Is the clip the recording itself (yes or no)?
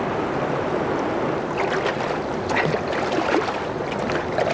yes